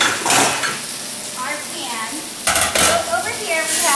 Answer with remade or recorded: recorded